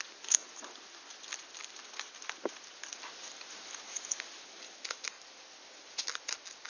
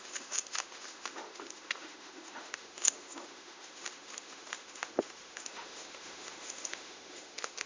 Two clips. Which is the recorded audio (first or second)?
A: first